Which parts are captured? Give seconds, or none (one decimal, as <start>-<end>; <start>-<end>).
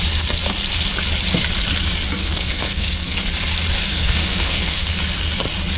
0.0-2.2; 3.3-3.9; 5.0-5.8